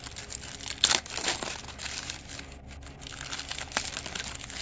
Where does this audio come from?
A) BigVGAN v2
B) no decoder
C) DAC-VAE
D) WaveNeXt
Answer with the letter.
B